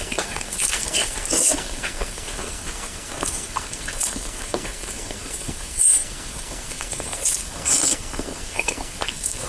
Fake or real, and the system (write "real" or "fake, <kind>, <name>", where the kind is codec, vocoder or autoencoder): fake, codec, SNAC